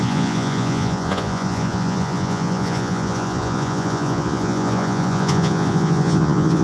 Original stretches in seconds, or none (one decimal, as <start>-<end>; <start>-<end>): none